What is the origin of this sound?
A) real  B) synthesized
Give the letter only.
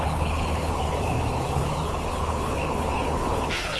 B